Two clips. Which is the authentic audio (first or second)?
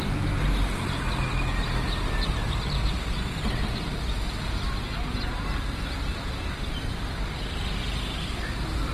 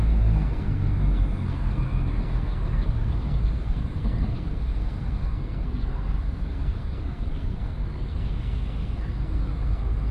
first